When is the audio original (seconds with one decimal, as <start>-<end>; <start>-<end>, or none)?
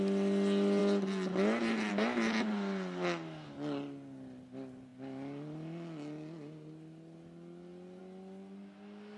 0.0-9.2